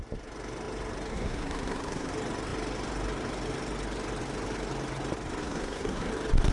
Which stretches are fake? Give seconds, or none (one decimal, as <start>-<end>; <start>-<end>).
1.1-2.1; 5.4-6.1